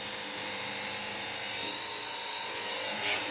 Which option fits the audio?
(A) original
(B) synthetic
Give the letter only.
A